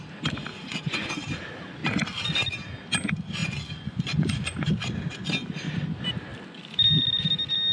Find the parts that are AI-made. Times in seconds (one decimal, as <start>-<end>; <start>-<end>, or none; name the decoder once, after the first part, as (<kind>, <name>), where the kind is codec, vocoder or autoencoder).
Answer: 0.5-1.1 (vocoder, Vocos); 3.4-4.7